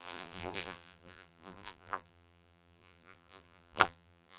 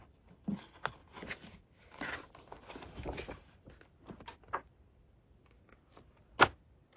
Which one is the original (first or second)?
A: second